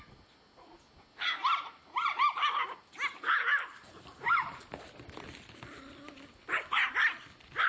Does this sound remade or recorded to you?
recorded